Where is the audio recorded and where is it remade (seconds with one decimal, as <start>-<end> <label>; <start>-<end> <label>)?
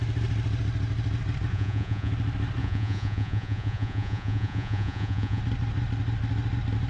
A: 0.0-1.5 recorded; 1.5-2.1 remade; 2.1-2.6 recorded; 2.6-5.4 remade; 5.4-6.9 recorded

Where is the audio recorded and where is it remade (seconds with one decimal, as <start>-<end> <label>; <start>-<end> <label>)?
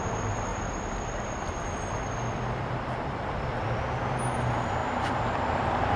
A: 0.0-0.5 recorded; 0.5-3.8 remade; 3.8-4.8 recorded; 4.8-6.0 remade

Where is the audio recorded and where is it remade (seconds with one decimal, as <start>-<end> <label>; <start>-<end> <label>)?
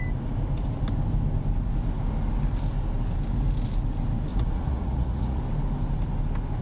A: 0.0-4.3 recorded; 4.3-5.4 remade; 5.4-6.6 recorded